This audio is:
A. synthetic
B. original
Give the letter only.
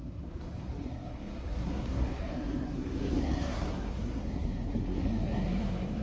A